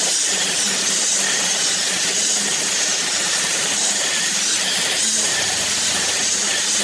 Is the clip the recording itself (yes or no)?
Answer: no